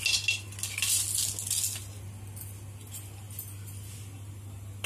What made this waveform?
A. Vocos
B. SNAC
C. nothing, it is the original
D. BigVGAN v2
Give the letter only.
C